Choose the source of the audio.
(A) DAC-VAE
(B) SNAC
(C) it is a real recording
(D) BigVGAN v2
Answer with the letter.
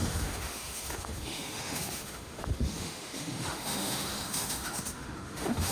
A